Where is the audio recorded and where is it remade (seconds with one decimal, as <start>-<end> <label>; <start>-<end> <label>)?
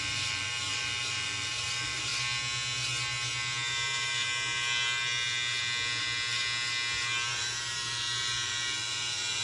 0.0-2.1 remade; 2.1-7.3 recorded; 7.3-9.4 remade